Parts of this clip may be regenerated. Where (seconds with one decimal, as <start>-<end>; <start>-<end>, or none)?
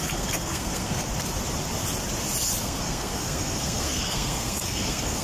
0.0-1.1; 2.6-5.2